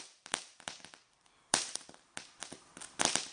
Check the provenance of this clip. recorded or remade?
remade